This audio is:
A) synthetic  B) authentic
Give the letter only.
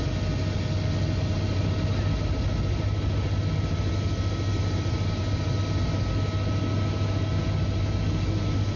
B